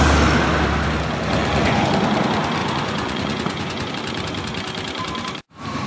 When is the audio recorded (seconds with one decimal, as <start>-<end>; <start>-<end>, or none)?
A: 0.0-1.4; 1.9-2.6; 3.9-5.9